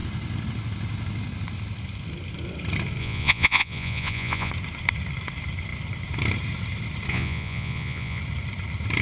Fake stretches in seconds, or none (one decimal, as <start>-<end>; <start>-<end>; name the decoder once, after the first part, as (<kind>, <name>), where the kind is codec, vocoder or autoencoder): 3.0-4.5 (vocoder, Vocos); 7.1-8.2

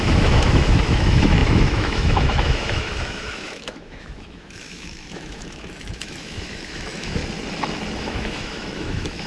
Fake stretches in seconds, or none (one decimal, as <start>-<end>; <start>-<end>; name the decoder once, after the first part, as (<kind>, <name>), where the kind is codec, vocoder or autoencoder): 0.0-7.2 (autoencoder, DAC-VAE); 8.0-9.3

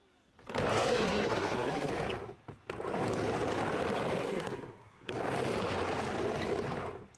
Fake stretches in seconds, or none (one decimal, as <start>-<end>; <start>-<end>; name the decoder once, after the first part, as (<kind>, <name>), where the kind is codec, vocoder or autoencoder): 0.7-1.9 (codec, SNAC); 4.2-5.1

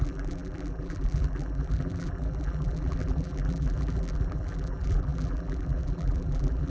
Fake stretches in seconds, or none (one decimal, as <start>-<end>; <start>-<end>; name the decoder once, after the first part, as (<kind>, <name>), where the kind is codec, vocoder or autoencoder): 0.0-6.7 (vocoder, BigVGAN v2)

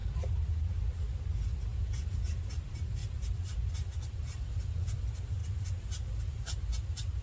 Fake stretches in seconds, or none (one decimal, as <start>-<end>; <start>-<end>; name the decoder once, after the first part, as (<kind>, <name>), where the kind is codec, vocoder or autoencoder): 1.7-2.4 (vocoder, Vocos)

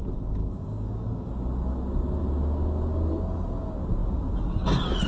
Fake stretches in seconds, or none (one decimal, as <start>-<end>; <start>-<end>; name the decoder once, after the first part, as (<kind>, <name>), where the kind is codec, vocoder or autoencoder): 0.4-1.3 (codec, DAC)